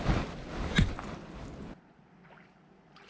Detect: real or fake real